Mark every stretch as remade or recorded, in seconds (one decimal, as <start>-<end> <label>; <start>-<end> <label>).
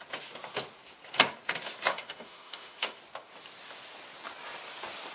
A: 0.0-1.9 recorded; 1.9-3.0 remade; 3.0-5.1 recorded